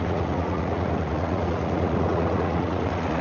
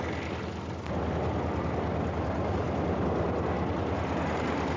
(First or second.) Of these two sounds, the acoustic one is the second